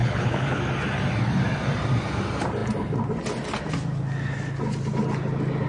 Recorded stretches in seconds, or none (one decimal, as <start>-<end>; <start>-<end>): 0.6-5.7